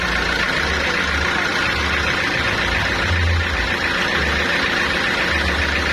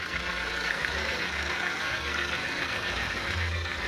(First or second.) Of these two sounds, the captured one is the first